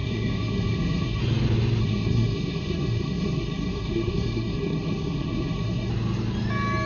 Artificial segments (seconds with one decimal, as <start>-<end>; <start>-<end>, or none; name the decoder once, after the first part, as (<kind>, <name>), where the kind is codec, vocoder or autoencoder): 0.0-1.2 (codec, SNAC); 1.8-5.9

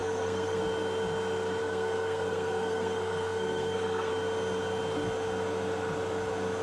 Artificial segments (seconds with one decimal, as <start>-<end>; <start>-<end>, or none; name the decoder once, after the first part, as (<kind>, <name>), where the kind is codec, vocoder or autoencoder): 0.0-0.6 (codec, SNAC); 1.6-4.1

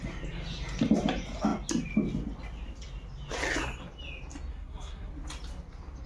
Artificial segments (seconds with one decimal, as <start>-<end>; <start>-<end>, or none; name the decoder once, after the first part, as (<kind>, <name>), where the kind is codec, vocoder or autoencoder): 4.5-5.1 (codec, SNAC)

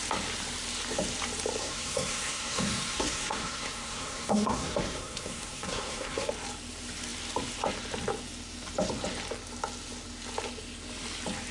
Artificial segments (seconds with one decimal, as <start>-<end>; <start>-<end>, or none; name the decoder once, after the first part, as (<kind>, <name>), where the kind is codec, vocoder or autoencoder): 1.6-6.3 (codec, SNAC)

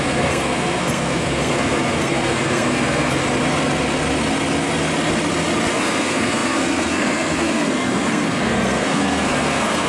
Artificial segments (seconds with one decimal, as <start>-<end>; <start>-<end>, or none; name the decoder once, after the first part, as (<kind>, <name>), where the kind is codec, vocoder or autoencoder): 0.0-3.2 (codec, SNAC); 5.7-9.9

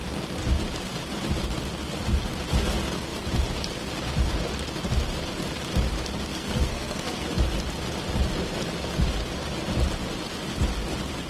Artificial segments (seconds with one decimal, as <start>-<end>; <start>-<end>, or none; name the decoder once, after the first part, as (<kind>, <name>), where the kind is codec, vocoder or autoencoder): 6.3-7.3 (codec, SNAC)

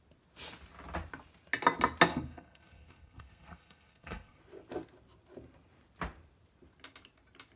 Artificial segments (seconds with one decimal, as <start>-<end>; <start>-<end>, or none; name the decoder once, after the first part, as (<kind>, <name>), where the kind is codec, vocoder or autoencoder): 2.1-4.4 (codec, SNAC)